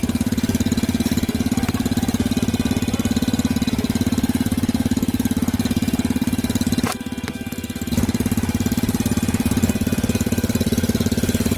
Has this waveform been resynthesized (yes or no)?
no